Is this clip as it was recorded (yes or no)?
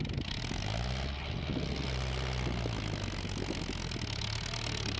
yes